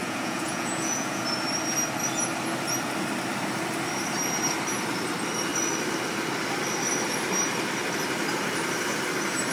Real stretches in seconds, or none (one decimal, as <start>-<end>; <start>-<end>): 1.2-9.5